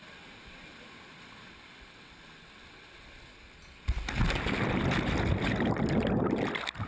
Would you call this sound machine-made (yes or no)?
no